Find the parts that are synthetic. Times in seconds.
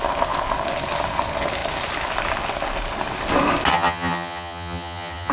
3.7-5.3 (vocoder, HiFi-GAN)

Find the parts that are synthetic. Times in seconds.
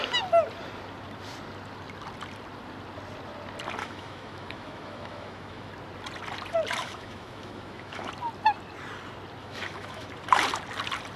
3.8-5.7 (autoencoder, DAC-VAE); 6.8-8.1; 9.4-10.1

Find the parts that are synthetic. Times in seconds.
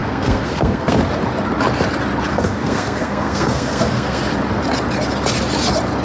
0.0-1.0 (codec, SNAC); 2.3-4.2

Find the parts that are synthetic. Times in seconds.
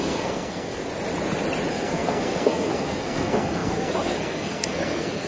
0.0-0.8 (codec, SNAC); 1.7-5.3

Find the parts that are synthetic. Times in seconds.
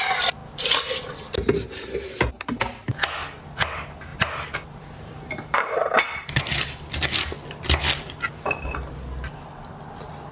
4.1-6.4 (vocoder, BigVGAN v2)